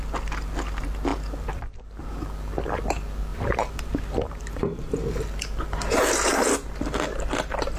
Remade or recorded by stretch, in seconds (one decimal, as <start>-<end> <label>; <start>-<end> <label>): 0.0-3.3 recorded; 3.3-4.9 remade; 4.9-7.8 recorded